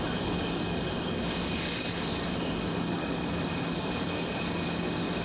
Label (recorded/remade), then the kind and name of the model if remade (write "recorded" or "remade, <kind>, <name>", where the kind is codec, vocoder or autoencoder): remade, codec, DAC